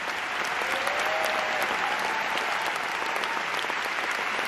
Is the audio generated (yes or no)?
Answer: no